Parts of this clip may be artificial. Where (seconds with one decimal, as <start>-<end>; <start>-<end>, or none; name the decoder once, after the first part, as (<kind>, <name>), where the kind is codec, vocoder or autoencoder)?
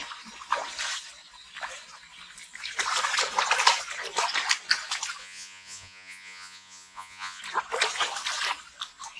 5.2-7.4 (vocoder, Vocos)